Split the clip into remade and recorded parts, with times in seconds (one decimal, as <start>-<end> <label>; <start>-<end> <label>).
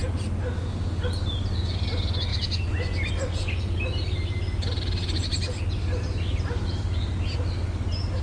0.0-8.2 recorded